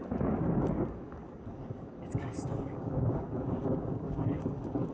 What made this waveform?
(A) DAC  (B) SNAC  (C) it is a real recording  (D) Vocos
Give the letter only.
A